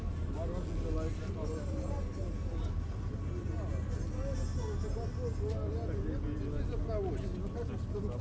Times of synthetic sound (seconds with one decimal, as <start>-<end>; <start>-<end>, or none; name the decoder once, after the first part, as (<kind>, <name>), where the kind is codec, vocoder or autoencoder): 1.1-3.3 (vocoder, BigVGAN v2)